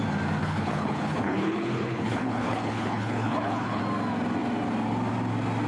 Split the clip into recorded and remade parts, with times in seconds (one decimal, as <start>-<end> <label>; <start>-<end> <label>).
0.0-0.4 recorded; 0.4-3.8 remade; 3.8-5.7 recorded